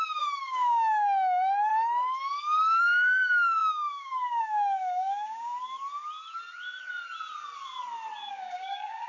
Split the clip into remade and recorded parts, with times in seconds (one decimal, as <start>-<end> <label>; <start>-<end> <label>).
0.0-1.7 remade; 1.7-2.8 recorded; 2.8-5.5 remade; 5.5-8.3 recorded; 8.3-9.1 remade